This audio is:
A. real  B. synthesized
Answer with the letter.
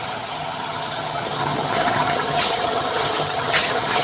B